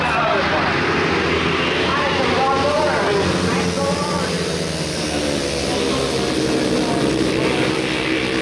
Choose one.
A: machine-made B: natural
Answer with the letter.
B